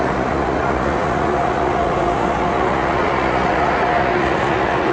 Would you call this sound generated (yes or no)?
yes